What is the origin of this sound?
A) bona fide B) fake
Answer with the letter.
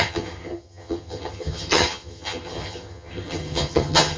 B